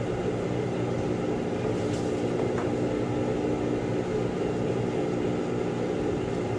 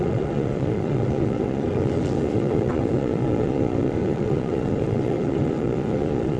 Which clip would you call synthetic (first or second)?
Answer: second